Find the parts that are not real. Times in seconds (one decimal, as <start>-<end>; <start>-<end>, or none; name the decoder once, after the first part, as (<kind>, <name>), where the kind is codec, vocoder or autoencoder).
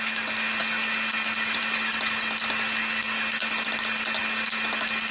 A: none